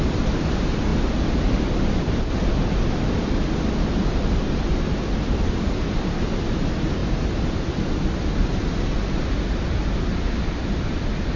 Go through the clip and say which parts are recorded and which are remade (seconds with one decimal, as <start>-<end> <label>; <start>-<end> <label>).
0.0-7.0 remade; 7.0-10.5 recorded; 10.5-11.4 remade